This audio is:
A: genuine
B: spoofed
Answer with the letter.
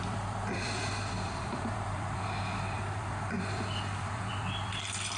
B